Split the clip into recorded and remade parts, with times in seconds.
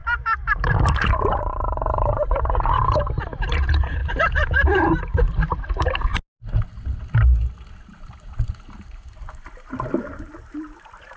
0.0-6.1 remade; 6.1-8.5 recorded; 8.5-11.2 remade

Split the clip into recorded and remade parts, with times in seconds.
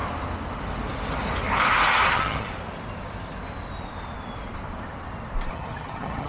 0.0-2.1 recorded; 2.1-2.5 remade; 2.5-5.5 recorded; 5.5-6.3 remade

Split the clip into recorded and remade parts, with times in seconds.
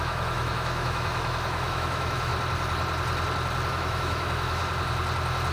0.0-2.3 remade; 2.3-3.7 recorded; 3.7-4.6 remade; 4.6-5.5 recorded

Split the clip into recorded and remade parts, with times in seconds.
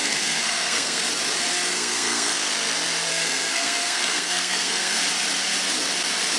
0.0-1.0 remade; 1.0-1.7 recorded; 1.7-2.5 remade; 2.5-3.1 recorded; 3.1-5.0 remade; 5.0-6.4 recorded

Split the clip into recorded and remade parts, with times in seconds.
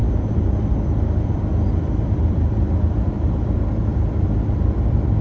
0.0-5.2 remade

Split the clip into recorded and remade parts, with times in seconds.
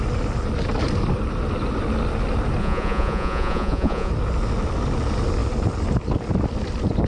0.0-2.6 recorded; 2.6-4.1 remade; 4.1-7.1 recorded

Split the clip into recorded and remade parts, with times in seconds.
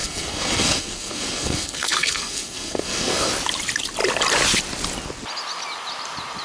0.0-3.3 remade; 3.3-6.4 recorded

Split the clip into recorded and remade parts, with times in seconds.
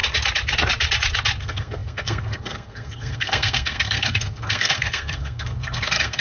0.0-1.4 recorded; 1.4-6.2 remade